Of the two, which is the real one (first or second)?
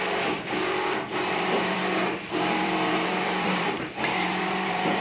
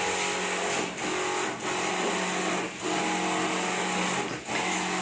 second